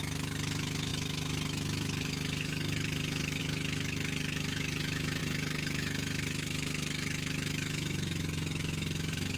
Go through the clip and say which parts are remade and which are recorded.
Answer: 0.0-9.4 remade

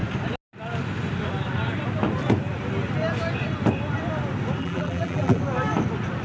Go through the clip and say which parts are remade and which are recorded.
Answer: 0.0-4.6 recorded; 4.6-5.4 remade; 5.4-6.2 recorded

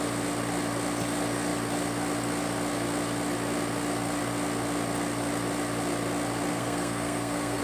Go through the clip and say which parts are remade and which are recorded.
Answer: 0.0-6.5 recorded; 6.5-7.6 remade

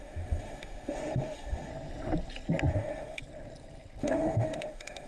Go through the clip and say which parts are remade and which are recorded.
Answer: 0.0-1.7 remade; 1.7-2.7 recorded; 2.7-3.2 remade; 3.2-4.0 recorded; 4.0-5.1 remade